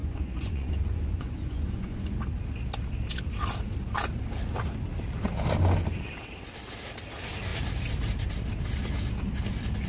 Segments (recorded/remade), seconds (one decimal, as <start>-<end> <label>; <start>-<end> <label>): 0.0-2.2 remade; 2.2-9.9 recorded

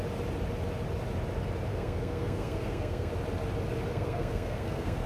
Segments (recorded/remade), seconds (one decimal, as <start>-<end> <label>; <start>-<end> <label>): 0.0-1.7 recorded; 1.7-3.1 remade; 3.1-3.9 recorded; 3.9-5.1 remade

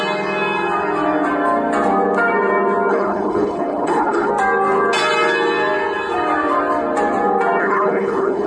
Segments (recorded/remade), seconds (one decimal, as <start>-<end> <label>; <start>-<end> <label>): 0.0-2.9 recorded; 2.9-4.3 remade; 4.3-7.6 recorded; 7.6-8.5 remade

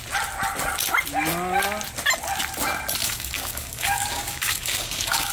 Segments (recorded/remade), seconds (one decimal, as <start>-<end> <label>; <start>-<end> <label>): 0.0-3.0 recorded; 3.0-5.3 remade

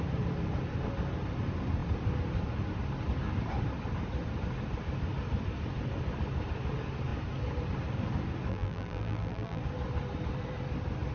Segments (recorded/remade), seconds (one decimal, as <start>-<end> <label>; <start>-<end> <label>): 0.0-8.5 recorded; 8.5-9.6 remade; 9.6-11.1 recorded

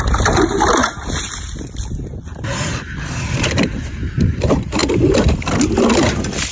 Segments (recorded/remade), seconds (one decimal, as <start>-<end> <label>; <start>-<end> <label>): 0.0-4.8 recorded; 4.8-5.5 remade; 5.5-6.5 recorded